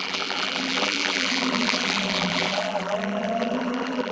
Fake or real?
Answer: fake